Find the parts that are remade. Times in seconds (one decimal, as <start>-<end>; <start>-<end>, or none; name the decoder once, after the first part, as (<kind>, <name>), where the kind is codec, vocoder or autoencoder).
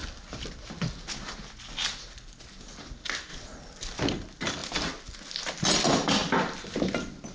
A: none